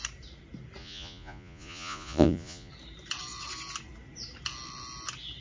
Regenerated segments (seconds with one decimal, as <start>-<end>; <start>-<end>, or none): 0.8-2.7